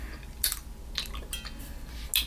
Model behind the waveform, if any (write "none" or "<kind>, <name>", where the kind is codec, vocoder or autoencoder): none